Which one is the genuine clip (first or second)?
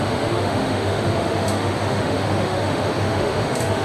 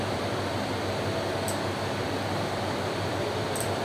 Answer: second